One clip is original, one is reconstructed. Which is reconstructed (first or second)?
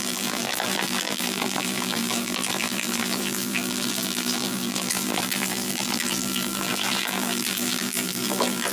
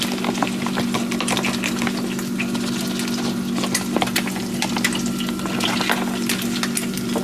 first